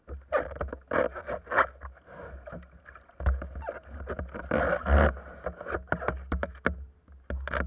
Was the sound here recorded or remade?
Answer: recorded